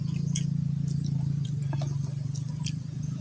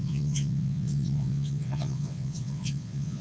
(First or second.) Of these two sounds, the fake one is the second